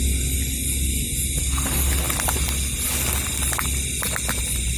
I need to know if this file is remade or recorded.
recorded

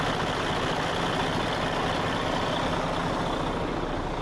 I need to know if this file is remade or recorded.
recorded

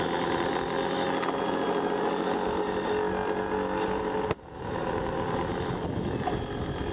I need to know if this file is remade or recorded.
recorded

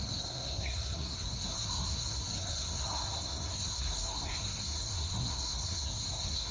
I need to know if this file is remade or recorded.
remade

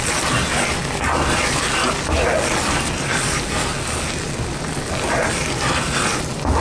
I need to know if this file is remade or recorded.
recorded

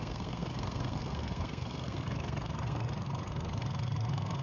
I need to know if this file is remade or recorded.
remade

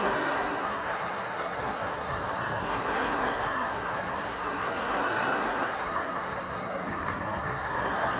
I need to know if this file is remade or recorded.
remade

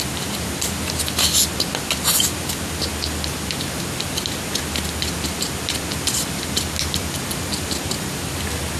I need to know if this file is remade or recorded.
recorded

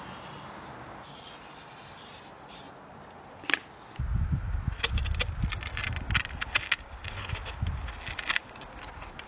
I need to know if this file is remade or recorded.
recorded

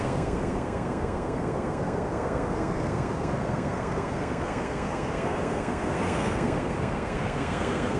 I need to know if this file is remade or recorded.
remade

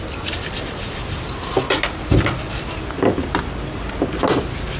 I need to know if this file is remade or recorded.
recorded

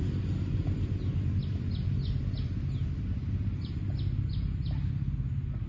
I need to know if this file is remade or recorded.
recorded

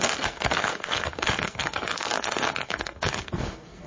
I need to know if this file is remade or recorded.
remade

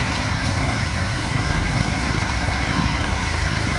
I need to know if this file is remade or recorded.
remade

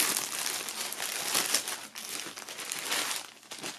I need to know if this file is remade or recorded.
recorded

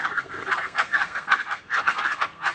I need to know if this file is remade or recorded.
remade